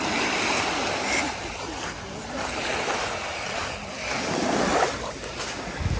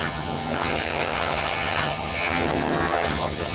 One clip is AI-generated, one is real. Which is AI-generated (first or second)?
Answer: second